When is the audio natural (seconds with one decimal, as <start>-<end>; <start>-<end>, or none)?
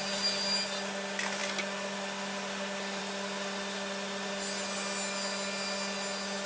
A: 0.0-6.5